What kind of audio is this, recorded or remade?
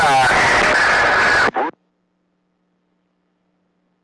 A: recorded